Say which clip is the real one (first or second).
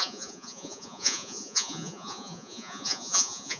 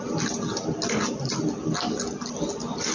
second